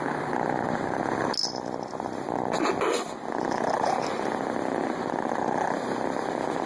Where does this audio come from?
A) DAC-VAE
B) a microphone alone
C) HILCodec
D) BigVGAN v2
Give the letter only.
B